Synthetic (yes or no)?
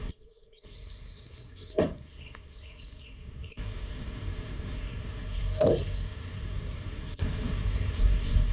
yes